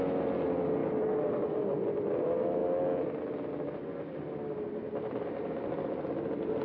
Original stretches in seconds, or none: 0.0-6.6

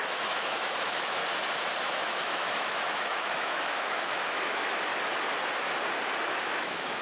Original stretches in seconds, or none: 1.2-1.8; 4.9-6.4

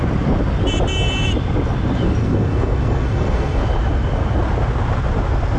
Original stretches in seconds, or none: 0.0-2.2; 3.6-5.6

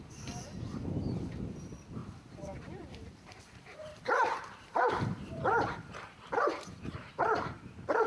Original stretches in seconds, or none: none

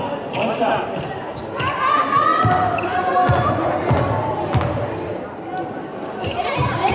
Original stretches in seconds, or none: 0.0-2.3; 2.8-6.9